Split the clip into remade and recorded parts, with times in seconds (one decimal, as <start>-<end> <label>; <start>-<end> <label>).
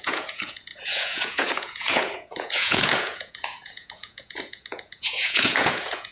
0.0-6.1 remade